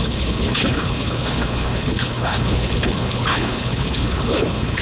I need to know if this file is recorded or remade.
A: remade